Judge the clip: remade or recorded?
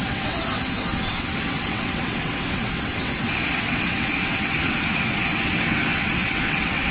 remade